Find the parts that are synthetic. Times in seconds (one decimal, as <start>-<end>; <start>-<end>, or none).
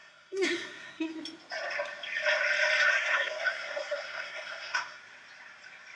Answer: 0.0-1.1; 2.9-5.0